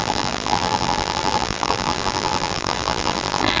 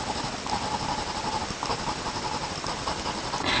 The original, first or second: second